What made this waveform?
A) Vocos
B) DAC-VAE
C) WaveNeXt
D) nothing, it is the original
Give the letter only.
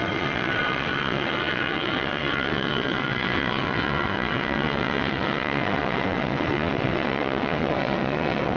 C